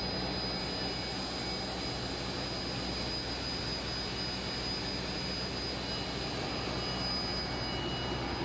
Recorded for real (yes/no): yes